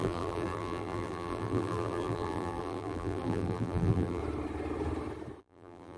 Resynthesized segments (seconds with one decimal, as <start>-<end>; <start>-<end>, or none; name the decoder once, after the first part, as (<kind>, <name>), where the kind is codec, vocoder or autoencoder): 0.0-4.2 (vocoder, BigVGAN v2); 5.4-6.0